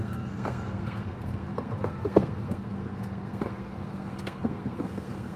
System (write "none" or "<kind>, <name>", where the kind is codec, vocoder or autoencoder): codec, SNAC